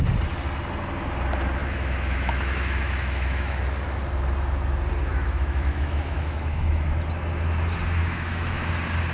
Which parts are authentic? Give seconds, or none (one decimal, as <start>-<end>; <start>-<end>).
0.0-1.6; 3.6-5.1; 6.9-8.0; 8.7-9.1